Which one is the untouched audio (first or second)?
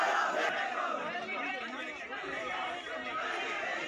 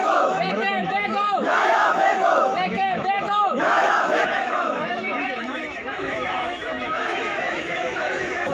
first